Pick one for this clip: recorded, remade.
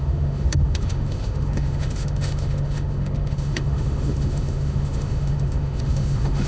remade